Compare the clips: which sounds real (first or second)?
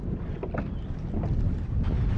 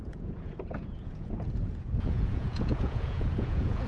first